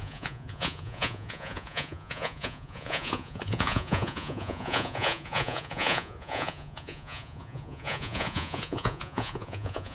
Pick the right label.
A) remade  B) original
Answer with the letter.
A